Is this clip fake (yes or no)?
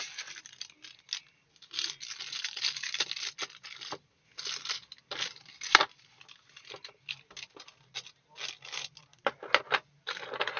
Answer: no